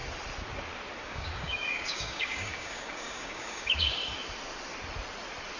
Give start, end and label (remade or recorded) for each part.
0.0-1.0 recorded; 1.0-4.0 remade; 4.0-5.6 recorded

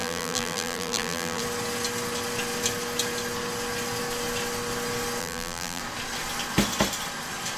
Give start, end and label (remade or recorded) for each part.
0.0-1.4 remade; 1.4-5.2 recorded; 5.2-5.8 remade; 5.8-7.6 recorded

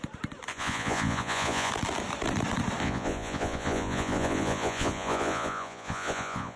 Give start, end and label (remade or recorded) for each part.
0.0-0.5 recorded; 0.5-1.7 remade; 1.7-2.8 recorded; 2.8-6.6 remade

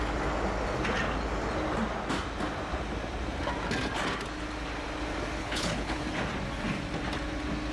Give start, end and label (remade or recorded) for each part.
0.0-5.4 recorded; 5.4-6.0 remade; 6.0-7.7 recorded

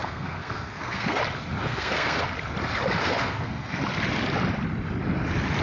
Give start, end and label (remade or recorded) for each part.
0.0-1.2 remade; 1.2-1.6 recorded; 1.6-2.2 remade; 2.2-3.0 recorded; 3.0-3.8 remade; 3.8-5.6 recorded